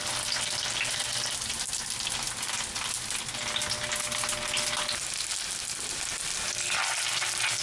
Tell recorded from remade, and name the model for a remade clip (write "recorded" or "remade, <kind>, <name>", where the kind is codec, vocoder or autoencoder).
recorded